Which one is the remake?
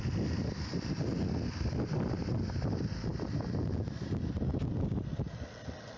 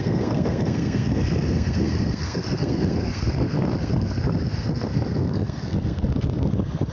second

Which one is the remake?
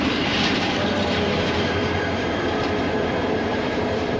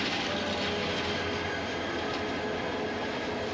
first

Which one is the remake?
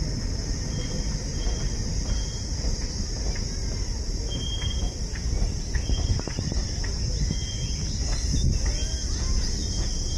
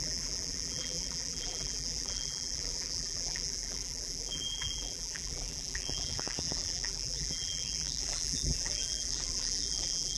second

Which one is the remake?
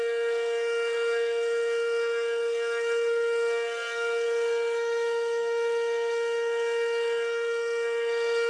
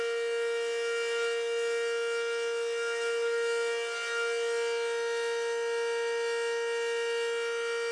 first